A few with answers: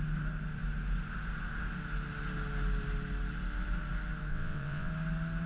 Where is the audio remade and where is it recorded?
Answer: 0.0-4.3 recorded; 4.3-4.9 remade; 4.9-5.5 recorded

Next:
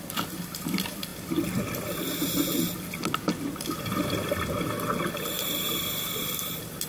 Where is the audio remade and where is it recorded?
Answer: 0.0-1.1 remade; 1.1-5.1 recorded; 5.1-6.9 remade

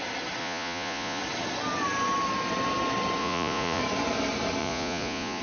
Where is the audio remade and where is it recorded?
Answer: 0.0-0.4 recorded; 0.4-1.2 remade; 1.2-3.2 recorded; 3.2-3.8 remade; 3.8-4.6 recorded; 4.6-5.4 remade